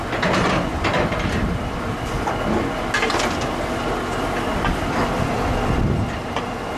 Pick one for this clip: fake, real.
real